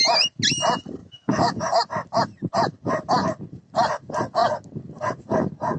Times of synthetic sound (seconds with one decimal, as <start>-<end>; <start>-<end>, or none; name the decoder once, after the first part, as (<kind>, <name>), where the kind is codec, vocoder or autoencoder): 1.0-1.6 (autoencoder, DAC-VAE)